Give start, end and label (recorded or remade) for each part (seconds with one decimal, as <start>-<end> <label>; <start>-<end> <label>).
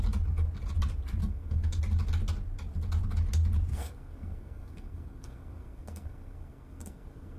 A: 0.0-1.2 recorded; 1.2-1.8 remade; 1.8-3.7 recorded; 3.7-7.4 remade